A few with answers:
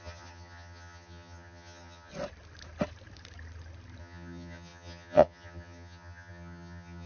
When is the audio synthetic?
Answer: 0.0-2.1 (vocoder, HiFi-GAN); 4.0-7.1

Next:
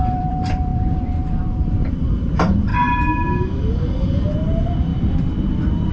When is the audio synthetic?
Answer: 0.0-2.7 (vocoder, BigVGAN v2); 3.7-4.9

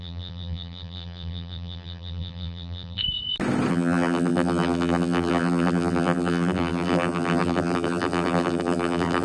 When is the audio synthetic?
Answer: 0.0-3.0 (vocoder, BigVGAN v2); 3.7-9.2

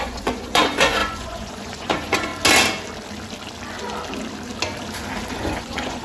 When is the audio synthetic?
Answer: 0.0-2.3 (vocoder, Vocos); 5.3-6.0